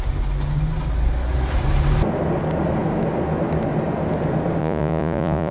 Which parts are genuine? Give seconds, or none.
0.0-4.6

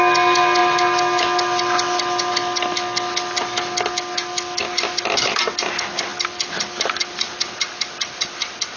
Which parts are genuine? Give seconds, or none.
0.0-8.8

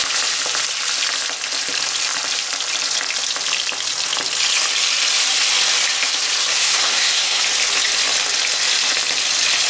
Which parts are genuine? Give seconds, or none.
0.0-6.5; 7.4-9.7

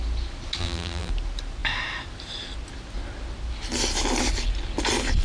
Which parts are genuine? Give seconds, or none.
0.0-0.6; 1.1-5.2

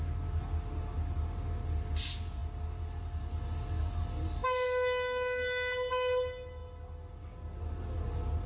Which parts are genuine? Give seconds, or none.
0.0-8.5

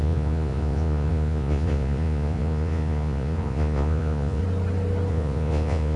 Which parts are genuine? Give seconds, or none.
4.4-5.1